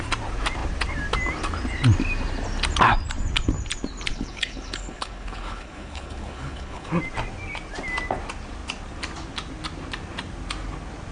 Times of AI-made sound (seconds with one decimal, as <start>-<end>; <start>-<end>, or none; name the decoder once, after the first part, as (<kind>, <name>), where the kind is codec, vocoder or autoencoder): 4.1-6.9 (codec, HILCodec)